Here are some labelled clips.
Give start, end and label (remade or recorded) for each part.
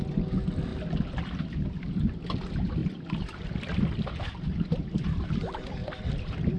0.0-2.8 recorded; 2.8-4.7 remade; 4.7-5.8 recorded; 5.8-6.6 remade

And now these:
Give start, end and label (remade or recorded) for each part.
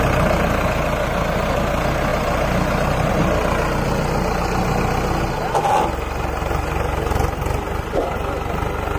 0.0-2.1 recorded; 2.1-3.1 remade; 3.1-9.0 recorded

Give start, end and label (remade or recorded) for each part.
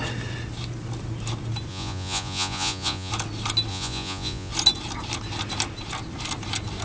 0.0-1.7 recorded; 1.7-3.1 remade; 3.1-3.7 recorded; 3.7-4.5 remade; 4.5-6.8 recorded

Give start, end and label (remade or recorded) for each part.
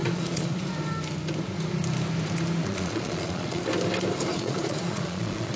0.0-0.6 remade; 0.6-2.6 recorded; 2.6-3.6 remade; 3.6-4.3 recorded; 4.3-5.6 remade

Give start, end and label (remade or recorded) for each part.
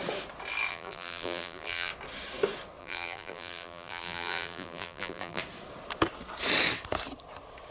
0.0-0.7 recorded; 0.7-1.9 remade; 1.9-2.8 recorded; 2.8-5.4 remade; 5.4-7.7 recorded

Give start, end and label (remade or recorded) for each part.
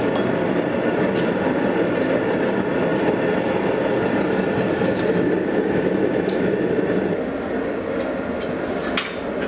0.0-9.5 recorded